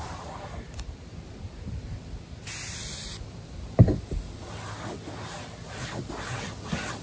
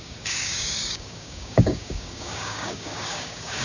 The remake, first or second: second